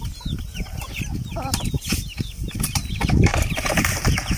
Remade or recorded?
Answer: remade